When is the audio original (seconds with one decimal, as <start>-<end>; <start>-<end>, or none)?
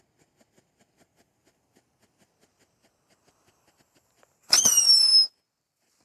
0.0-6.0